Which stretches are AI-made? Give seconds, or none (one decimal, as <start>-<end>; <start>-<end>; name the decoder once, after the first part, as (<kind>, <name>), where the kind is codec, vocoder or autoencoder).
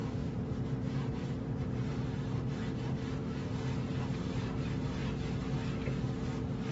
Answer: 0.0-1.9 (vocoder, BigVGAN v2)